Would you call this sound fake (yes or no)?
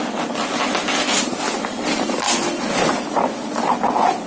no